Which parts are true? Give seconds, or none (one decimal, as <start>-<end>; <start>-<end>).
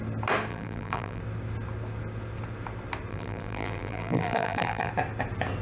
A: 0.0-0.5; 1.2-3.1; 4.9-5.6